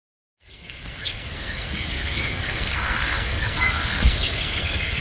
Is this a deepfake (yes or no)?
yes